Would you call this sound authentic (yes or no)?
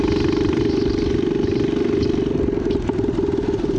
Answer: yes